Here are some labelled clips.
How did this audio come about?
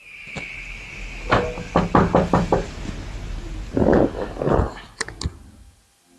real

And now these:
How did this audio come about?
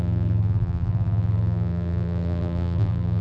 fake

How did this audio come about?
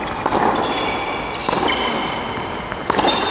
real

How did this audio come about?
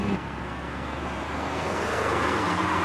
fake